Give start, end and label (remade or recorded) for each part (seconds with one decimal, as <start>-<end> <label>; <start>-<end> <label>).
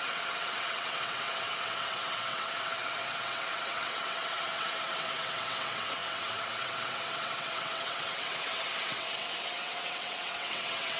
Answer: 0.0-11.0 remade